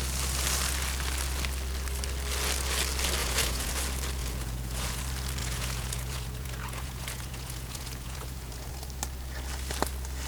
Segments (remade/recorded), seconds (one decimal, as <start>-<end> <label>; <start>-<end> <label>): 0.0-3.2 recorded; 3.2-3.7 remade; 3.7-4.2 recorded; 4.2-5.0 remade; 5.0-5.4 recorded; 5.4-8.7 remade; 8.7-10.3 recorded